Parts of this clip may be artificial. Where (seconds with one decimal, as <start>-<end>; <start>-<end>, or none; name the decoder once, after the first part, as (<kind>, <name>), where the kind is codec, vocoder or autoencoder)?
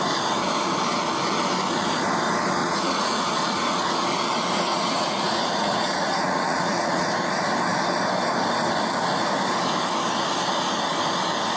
2.6-3.9 (vocoder, Vocos); 4.7-7.1